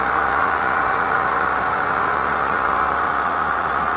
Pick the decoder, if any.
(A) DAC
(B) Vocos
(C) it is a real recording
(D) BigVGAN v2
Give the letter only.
B